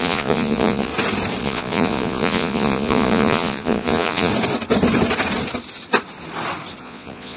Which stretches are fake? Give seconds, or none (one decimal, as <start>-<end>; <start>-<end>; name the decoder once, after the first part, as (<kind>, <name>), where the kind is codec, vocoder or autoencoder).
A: 0.0-0.9 (vocoder, Vocos); 1.4-4.3; 6.8-7.4